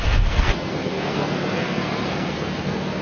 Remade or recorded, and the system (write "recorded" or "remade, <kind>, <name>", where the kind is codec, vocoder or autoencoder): remade, codec, SNAC